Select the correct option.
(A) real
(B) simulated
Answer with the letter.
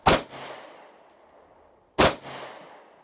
A